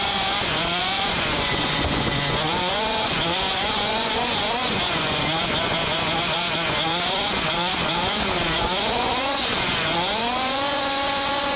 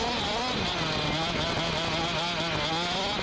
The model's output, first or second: first